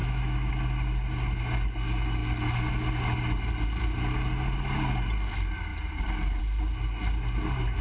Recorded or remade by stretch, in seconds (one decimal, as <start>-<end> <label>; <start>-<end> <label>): 0.0-0.5 remade; 0.5-7.8 recorded